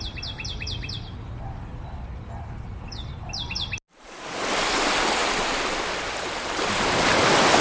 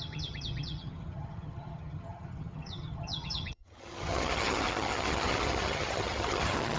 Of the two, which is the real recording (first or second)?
first